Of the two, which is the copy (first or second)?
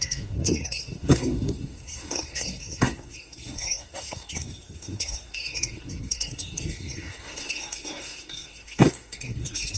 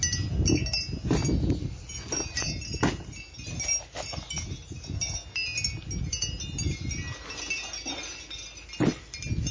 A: first